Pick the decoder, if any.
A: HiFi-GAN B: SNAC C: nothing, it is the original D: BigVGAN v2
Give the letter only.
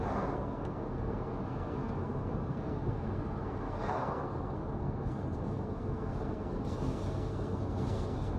B